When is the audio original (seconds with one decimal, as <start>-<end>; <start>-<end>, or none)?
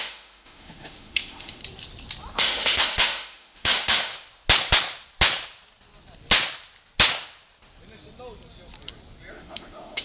1.6-2.3; 4.1-9.3